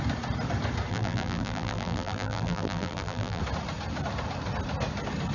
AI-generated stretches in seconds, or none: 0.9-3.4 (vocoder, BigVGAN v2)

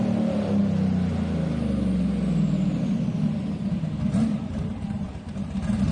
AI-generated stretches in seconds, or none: 0.0-0.6 (vocoder, BigVGAN v2); 4.1-5.9

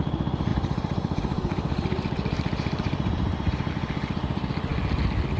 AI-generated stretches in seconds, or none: 0.5-3.7 (vocoder, BigVGAN v2)

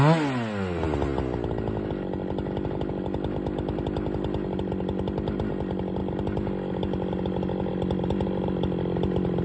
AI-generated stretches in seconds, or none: none

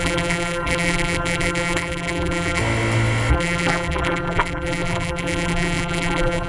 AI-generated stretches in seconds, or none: 0.0-2.6 (vocoder, BigVGAN v2); 3.3-6.5

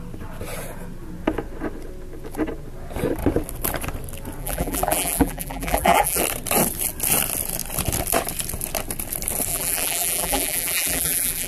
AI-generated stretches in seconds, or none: 4.4-6.2 (vocoder, BigVGAN v2); 9.5-11.5

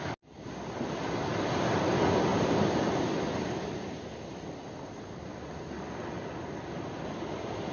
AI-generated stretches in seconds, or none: 1.3-1.9 (vocoder, BigVGAN v2)